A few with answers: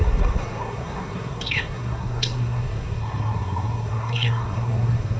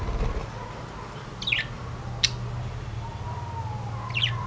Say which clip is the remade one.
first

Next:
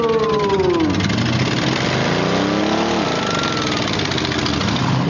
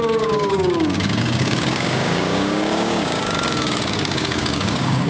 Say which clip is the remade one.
second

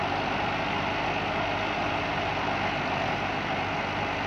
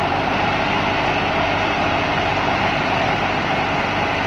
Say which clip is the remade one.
second